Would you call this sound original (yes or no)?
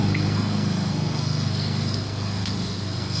no